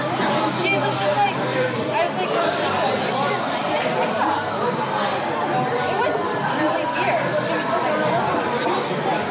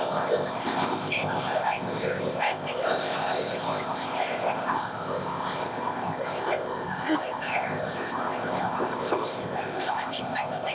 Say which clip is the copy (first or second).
second